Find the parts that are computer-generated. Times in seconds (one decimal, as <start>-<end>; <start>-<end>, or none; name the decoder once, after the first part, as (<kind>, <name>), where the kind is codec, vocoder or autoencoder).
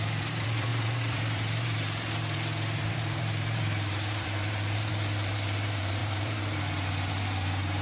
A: 0.0-7.8 (vocoder, BigVGAN v2)